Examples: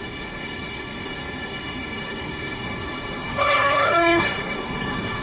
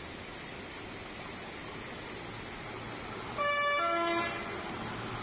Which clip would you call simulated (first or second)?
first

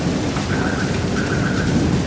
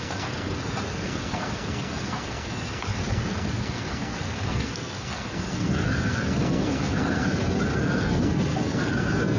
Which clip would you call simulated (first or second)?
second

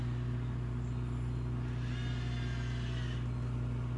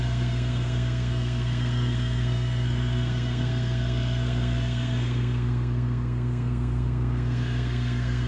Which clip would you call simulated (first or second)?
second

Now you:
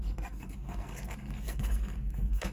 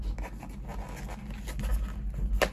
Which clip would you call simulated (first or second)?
first